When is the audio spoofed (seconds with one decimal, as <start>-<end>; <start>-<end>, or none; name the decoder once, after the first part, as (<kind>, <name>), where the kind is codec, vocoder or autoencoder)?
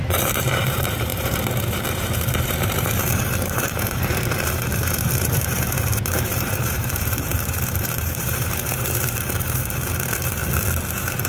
0.0-10.4 (vocoder, BigVGAN v2); 10.9-11.3